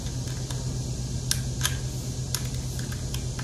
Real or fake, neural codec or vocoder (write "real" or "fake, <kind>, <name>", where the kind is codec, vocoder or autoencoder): real